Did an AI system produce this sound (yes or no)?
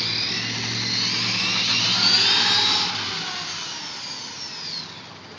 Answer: no